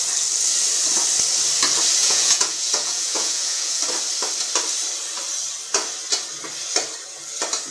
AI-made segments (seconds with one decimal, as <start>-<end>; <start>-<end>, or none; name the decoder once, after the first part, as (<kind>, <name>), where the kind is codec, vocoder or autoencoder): 2.0-3.8 (vocoder, Vocos)

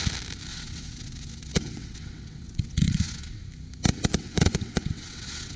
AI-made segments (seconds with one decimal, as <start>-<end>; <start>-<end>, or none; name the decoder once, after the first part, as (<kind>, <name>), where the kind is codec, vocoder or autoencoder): 0.5-3.4 (vocoder, WaveNeXt); 4.1-5.6

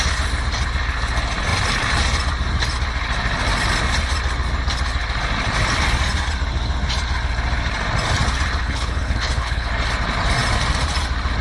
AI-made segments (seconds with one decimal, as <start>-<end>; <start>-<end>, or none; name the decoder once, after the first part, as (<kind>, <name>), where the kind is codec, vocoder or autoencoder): 8.6-9.7 (codec, HILCodec)